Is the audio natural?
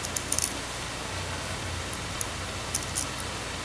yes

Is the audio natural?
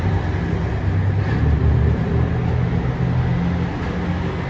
yes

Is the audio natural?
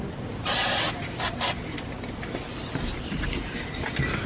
yes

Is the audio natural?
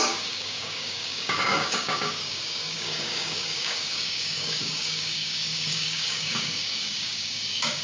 no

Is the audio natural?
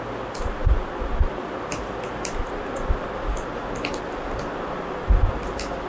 yes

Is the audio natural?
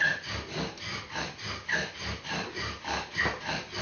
yes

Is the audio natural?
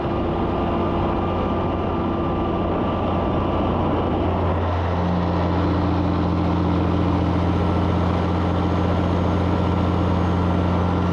yes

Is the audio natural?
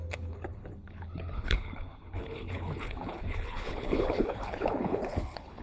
no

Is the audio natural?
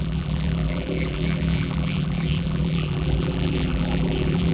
no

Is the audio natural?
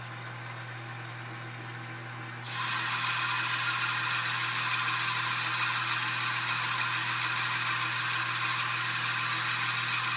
yes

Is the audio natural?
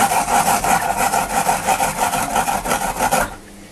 yes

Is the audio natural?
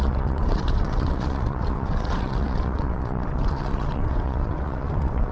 no